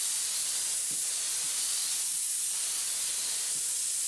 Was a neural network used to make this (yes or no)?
no